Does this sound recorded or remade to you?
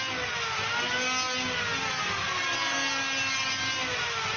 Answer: recorded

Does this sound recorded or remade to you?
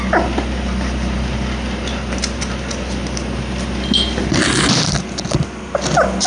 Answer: recorded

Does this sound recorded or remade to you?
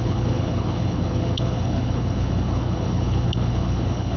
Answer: remade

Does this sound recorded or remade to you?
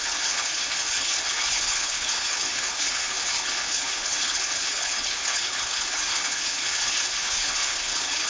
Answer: remade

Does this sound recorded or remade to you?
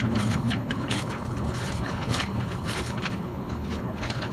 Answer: remade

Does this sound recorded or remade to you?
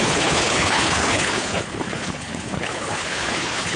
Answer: remade